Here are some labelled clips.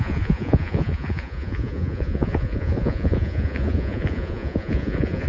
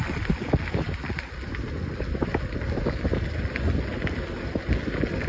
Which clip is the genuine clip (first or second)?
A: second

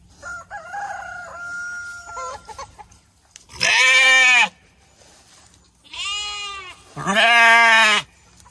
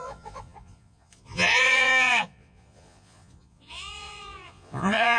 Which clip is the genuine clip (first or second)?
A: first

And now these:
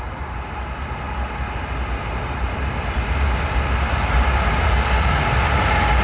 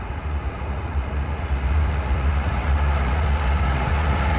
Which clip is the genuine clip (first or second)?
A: first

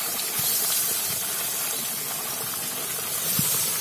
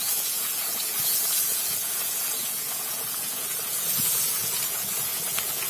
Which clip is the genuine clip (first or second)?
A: first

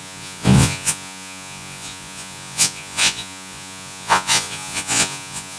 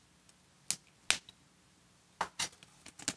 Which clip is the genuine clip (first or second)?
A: second